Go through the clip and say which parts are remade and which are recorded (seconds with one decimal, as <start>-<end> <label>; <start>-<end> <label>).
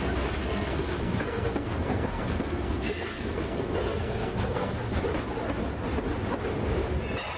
0.0-0.4 recorded; 0.4-4.7 remade; 4.7-7.4 recorded